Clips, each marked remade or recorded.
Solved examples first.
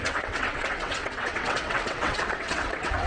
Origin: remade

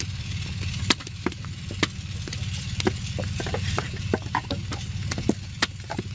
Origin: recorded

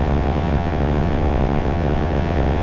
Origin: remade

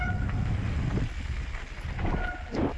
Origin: recorded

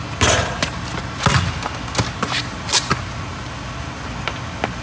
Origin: recorded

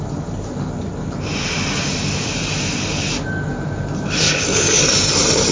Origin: recorded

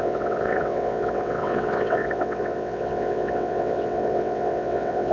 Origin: remade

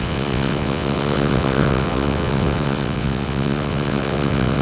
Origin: remade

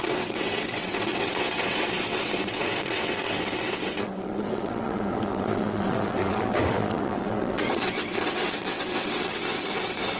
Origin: remade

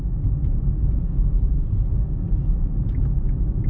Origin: recorded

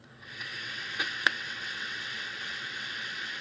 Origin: remade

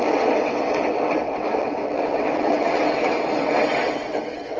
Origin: remade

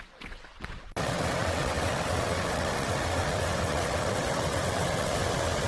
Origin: remade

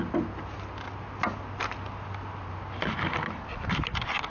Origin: recorded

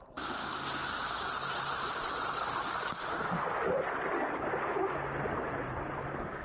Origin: recorded